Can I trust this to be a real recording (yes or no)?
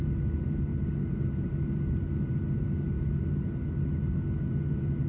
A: yes